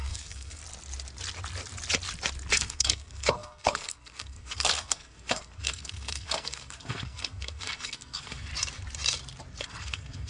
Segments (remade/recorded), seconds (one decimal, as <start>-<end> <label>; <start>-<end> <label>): 0.0-0.6 remade; 0.6-2.5 recorded; 2.5-8.5 remade; 8.5-9.6 recorded; 9.6-10.3 remade